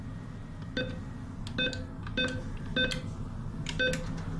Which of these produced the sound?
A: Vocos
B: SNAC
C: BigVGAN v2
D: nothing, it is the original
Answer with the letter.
D